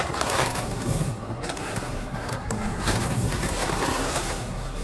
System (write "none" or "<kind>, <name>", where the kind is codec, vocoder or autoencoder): codec, SNAC